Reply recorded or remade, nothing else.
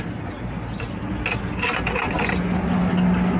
recorded